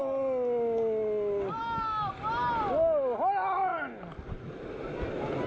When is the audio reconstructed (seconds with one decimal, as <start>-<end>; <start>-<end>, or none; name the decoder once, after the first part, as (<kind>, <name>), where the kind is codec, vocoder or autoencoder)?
none